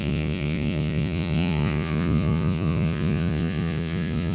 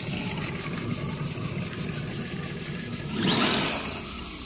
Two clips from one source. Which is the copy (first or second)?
first